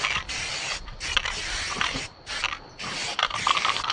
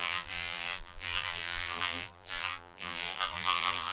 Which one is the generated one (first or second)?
second